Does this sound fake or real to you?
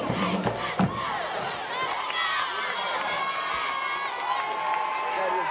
real